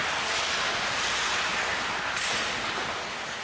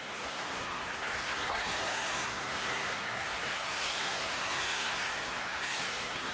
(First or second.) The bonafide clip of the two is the first